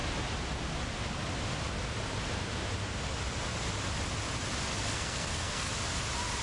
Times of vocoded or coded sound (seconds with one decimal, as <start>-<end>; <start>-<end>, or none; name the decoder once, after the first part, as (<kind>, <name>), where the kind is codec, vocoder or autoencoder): 4.7-5.7 (codec, SNAC)